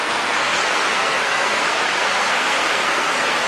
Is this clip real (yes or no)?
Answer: no